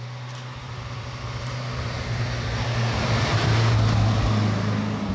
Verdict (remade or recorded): recorded